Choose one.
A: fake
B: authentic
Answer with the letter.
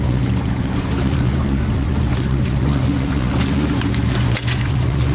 A